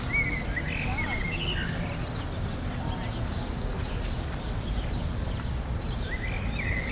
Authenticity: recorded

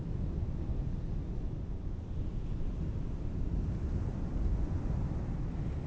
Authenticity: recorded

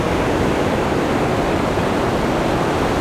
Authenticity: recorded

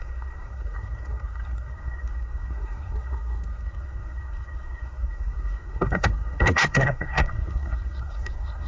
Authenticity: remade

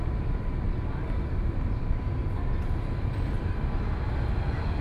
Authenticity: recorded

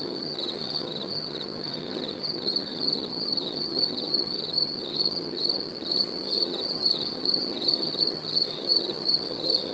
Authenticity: remade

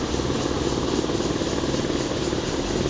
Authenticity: recorded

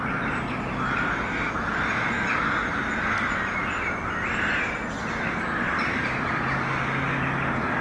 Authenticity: recorded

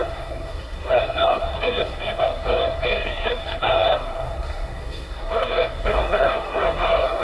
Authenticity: remade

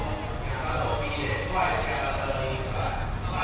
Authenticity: recorded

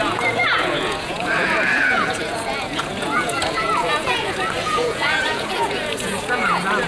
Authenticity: remade